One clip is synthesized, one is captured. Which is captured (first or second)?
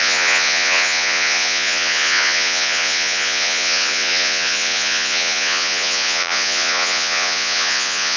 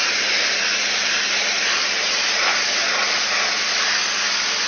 second